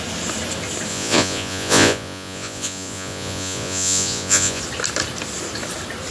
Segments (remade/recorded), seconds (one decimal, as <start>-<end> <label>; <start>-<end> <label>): 0.0-0.9 recorded; 0.9-4.6 remade; 4.6-6.1 recorded

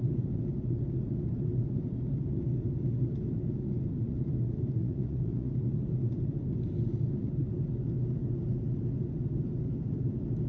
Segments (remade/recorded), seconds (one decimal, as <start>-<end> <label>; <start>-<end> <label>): 0.0-4.8 recorded; 4.8-5.5 remade; 5.5-10.5 recorded

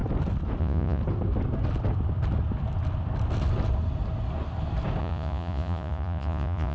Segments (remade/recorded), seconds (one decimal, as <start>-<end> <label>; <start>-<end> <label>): 0.0-0.6 recorded; 0.6-1.0 remade; 1.0-5.0 recorded; 5.0-6.7 remade

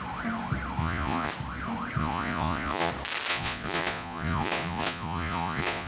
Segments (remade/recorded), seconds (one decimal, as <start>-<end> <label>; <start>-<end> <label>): 0.0-0.8 recorded; 0.8-1.3 remade; 1.3-2.0 recorded; 2.0-2.9 remade; 2.9-3.3 recorded; 3.3-5.9 remade

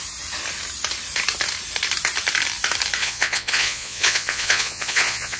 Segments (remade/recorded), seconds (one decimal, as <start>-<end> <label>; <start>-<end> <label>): 0.0-3.0 recorded; 3.0-5.4 remade

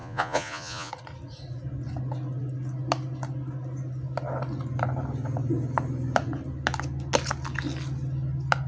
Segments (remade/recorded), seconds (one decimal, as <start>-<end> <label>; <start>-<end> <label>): 0.0-0.9 remade; 0.9-8.7 recorded

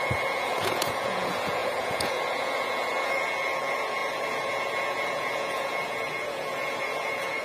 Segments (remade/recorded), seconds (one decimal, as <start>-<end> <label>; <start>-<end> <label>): 0.0-7.4 remade

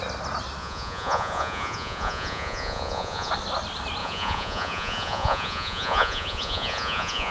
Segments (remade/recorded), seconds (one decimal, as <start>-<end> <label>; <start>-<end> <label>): 0.0-0.6 recorded; 0.6-3.3 remade; 3.3-4.0 recorded; 4.0-7.3 remade